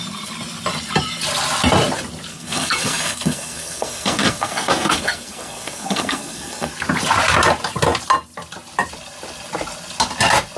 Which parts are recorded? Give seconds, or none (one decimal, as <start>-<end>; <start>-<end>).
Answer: 0.0-2.3; 6.7-10.6